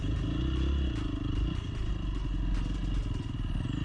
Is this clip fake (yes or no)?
no